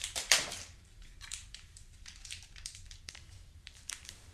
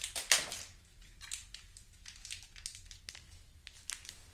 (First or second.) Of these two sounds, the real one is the second